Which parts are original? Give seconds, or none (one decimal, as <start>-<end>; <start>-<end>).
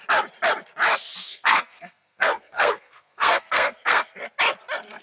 0.0-1.2; 4.2-5.0